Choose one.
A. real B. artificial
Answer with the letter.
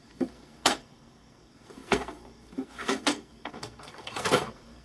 B